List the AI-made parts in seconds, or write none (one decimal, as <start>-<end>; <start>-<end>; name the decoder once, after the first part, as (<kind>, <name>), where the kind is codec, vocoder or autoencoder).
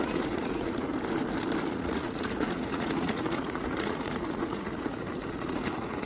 0.0-0.9 (vocoder, Vocos); 1.7-6.1